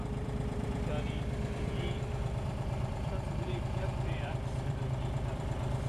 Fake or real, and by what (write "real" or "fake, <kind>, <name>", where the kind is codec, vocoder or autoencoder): fake, vocoder, BigVGAN v2